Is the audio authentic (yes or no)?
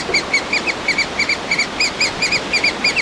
yes